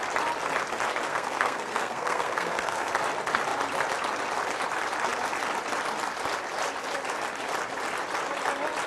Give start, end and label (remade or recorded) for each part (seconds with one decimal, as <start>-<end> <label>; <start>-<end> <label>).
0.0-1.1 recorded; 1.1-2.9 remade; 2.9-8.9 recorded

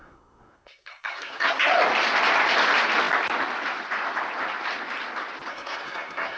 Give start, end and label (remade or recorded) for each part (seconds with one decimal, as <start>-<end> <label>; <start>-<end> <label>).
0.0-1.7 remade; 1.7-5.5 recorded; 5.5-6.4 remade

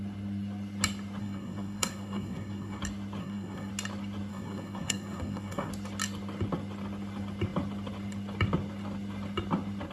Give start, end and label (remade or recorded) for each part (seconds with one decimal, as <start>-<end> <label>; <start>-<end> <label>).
0.0-1.2 recorded; 1.2-2.8 remade; 2.8-3.2 recorded; 3.2-3.7 remade; 3.7-4.3 recorded; 4.3-5.7 remade; 5.7-9.9 recorded

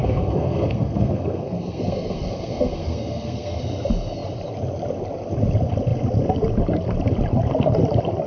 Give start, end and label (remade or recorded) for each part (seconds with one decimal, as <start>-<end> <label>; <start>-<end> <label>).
0.0-3.6 remade; 3.6-8.3 recorded

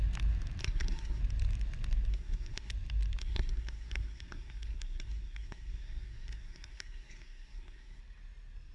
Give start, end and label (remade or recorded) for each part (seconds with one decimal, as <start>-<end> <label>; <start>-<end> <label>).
0.0-0.6 recorded; 0.6-1.2 remade; 1.2-2.1 recorded; 2.1-2.7 remade; 2.7-3.2 recorded; 3.2-8.0 remade; 8.0-8.7 recorded

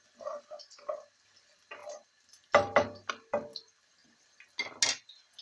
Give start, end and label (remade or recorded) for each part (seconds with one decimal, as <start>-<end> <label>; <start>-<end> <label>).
0.0-5.4 recorded

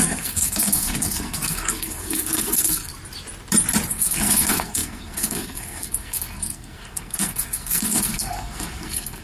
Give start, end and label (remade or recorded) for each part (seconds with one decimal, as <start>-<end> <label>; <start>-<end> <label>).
0.0-2.9 remade; 2.9-3.9 recorded; 3.9-9.2 remade